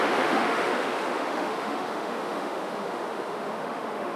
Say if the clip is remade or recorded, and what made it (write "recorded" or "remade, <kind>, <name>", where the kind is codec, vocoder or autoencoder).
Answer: remade, autoencoder, DAC-VAE